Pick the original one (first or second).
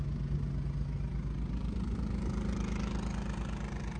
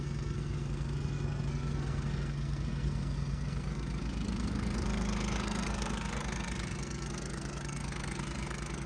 first